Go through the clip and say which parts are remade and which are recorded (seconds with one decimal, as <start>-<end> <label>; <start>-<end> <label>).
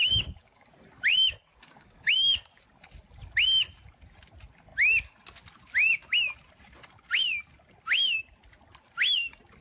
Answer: 0.0-0.7 remade; 0.7-1.5 recorded; 1.5-2.3 remade; 2.3-9.6 recorded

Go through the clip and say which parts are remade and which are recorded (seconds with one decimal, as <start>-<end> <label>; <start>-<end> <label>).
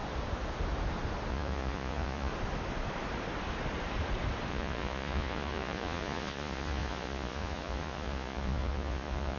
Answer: 0.0-1.3 recorded; 1.3-2.3 remade; 2.3-4.5 recorded; 4.5-9.4 remade